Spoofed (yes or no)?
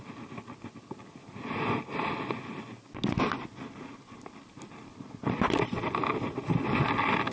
no